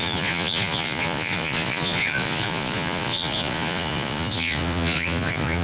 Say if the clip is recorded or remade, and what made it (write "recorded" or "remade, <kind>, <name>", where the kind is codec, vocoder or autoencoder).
remade, vocoder, Vocos